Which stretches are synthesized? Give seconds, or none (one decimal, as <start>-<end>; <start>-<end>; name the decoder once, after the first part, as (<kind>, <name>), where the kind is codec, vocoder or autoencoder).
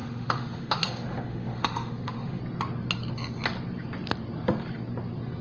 0.0-2.4 (autoencoder, DAC-VAE)